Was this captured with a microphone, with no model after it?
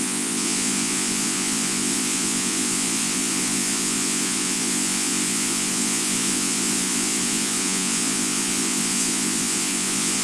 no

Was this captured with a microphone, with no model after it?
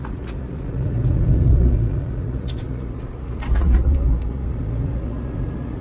no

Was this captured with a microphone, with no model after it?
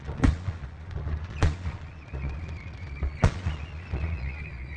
no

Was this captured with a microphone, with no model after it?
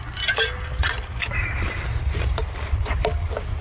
yes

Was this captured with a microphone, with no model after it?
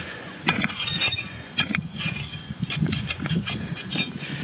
no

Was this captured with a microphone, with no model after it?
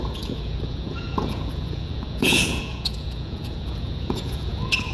no